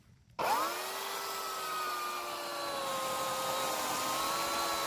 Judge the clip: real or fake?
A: real